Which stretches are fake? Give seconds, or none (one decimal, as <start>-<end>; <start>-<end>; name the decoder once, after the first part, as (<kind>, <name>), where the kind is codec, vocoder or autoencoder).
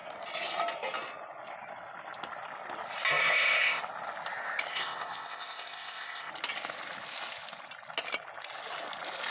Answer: 3.2-3.8 (codec, ZipCodec); 4.7-6.3